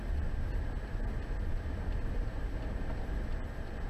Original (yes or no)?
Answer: yes